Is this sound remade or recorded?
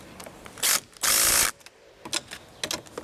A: recorded